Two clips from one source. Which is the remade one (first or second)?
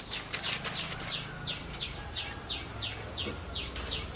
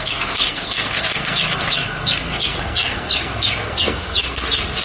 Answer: second